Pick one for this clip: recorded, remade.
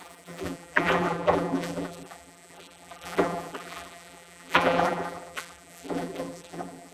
remade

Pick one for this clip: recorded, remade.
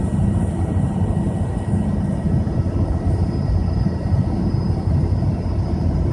remade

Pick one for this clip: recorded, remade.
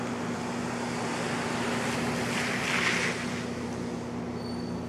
recorded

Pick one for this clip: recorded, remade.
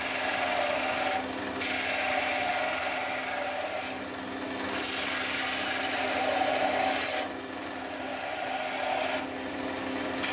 recorded